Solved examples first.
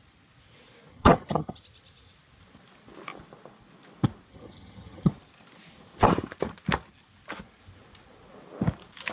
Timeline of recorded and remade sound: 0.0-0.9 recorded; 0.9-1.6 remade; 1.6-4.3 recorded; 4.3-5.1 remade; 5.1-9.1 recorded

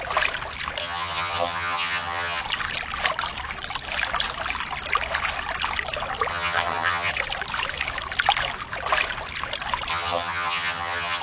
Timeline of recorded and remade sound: 0.0-0.8 recorded; 0.8-2.4 remade; 2.4-6.3 recorded; 6.3-7.1 remade; 7.1-9.9 recorded; 9.9-11.2 remade

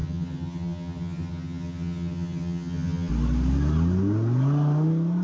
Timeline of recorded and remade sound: 0.0-3.1 remade; 3.1-5.2 recorded

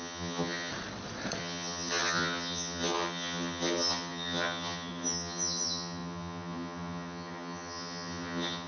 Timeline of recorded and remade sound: 0.0-0.7 remade; 0.7-1.4 recorded; 1.4-8.7 remade

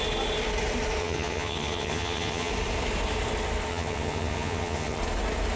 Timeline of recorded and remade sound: 0.0-1.0 recorded; 1.0-2.5 remade; 2.5-3.7 recorded; 3.7-5.0 remade; 5.0-5.6 recorded

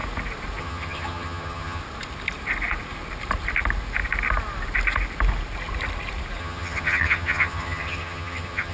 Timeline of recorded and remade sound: 0.0-0.6 recorded; 0.6-1.8 remade; 1.8-6.4 recorded; 6.4-8.7 remade

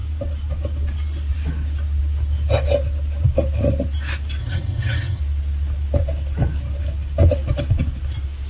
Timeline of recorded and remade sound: 0.0-4.4 recorded; 4.4-5.2 remade; 5.2-8.5 recorded